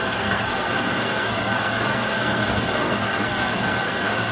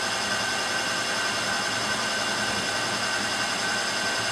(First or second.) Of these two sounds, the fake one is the first